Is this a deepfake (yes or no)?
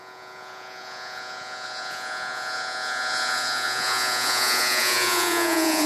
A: yes